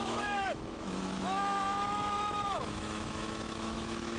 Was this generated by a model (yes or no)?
yes